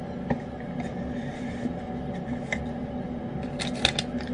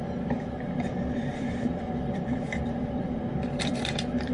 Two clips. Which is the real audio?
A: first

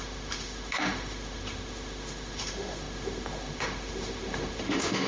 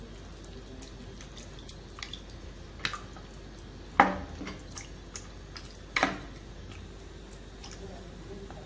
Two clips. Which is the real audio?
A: second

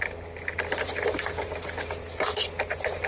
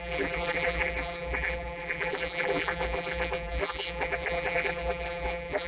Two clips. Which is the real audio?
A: first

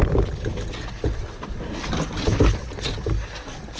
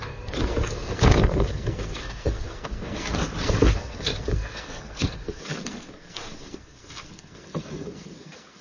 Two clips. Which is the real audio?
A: first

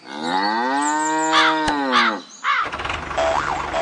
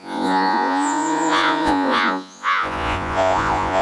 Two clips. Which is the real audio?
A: first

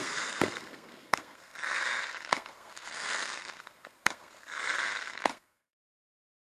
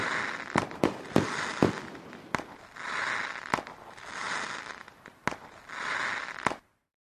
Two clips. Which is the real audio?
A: second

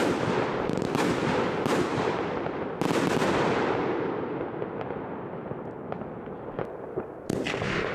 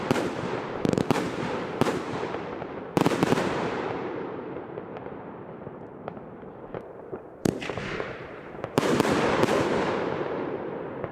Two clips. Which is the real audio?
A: first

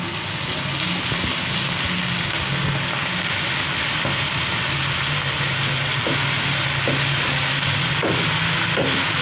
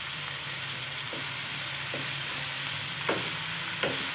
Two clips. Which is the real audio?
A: first